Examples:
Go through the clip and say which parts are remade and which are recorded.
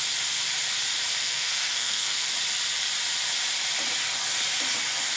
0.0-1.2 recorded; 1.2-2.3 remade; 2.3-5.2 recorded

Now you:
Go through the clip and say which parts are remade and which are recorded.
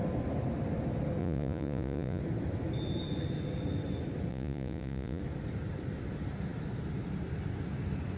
0.0-1.2 recorded; 1.2-2.2 remade; 2.2-4.3 recorded; 4.3-5.2 remade; 5.2-8.2 recorded